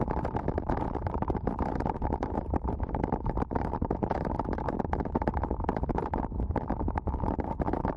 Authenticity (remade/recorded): remade